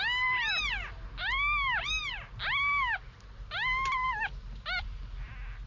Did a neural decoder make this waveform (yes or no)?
no